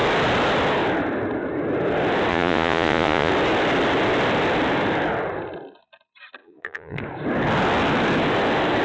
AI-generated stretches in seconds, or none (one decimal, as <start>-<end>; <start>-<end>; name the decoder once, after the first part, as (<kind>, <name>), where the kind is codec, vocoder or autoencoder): 2.3-3.3 (vocoder, Vocos); 6.4-7.0